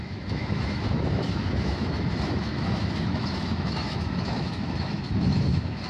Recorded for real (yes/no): no